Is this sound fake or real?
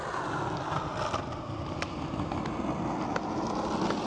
real